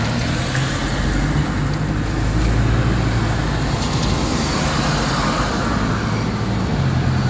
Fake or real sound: real